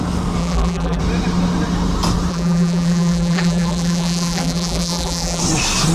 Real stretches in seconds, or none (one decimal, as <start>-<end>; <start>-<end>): 0.0-0.4; 1.0-2.3; 5.4-5.9

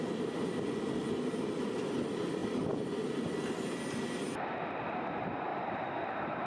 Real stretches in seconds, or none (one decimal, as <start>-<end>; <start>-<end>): 0.0-5.5